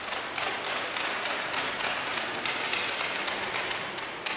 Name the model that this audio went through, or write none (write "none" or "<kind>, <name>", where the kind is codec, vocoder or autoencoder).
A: none